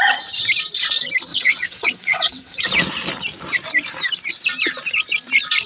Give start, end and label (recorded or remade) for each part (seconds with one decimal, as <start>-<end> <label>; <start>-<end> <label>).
0.0-1.3 recorded; 1.3-2.6 remade; 2.6-5.7 recorded